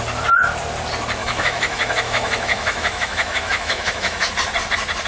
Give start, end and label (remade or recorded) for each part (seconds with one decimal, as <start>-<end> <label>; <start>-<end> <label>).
0.0-1.2 recorded; 1.2-4.3 remade; 4.3-5.1 recorded